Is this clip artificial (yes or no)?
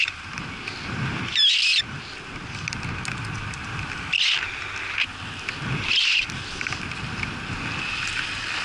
no